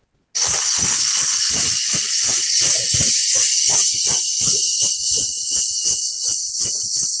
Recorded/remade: recorded